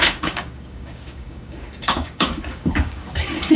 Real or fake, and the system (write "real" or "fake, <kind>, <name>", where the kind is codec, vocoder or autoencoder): fake, codec, DAC